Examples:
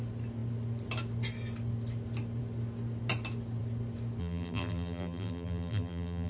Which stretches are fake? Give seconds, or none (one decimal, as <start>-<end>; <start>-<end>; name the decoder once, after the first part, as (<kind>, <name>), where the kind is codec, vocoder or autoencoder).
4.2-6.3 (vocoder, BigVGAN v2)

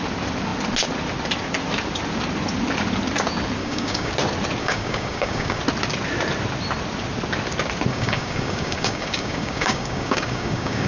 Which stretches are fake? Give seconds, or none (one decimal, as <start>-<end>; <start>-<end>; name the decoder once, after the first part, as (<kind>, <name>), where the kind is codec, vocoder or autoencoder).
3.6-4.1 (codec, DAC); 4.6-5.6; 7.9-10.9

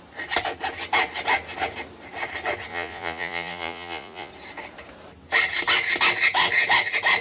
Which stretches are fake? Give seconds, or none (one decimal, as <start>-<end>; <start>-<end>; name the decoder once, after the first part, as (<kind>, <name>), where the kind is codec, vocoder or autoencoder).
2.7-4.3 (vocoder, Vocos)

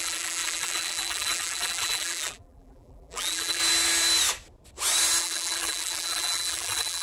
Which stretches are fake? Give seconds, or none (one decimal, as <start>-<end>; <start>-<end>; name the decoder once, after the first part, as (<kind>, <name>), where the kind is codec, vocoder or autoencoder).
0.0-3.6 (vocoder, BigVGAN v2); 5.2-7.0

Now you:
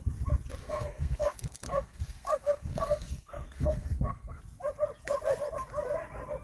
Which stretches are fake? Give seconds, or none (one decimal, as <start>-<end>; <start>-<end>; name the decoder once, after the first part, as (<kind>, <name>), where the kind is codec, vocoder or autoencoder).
0.6-4.4 (codec, SNAC)

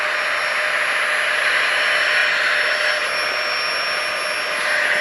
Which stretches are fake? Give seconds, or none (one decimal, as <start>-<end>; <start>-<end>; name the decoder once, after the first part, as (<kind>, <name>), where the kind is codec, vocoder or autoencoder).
none

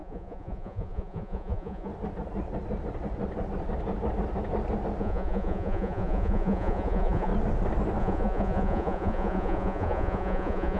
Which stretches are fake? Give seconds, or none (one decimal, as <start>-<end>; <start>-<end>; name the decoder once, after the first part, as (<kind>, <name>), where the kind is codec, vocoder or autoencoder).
0.0-1.9 (vocoder, Vocos); 5.0-7.3; 8.0-10.8